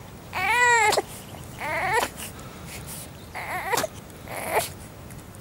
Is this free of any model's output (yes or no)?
no